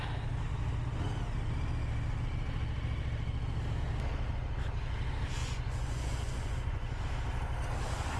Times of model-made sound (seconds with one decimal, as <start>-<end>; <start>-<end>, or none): 5.4-7.0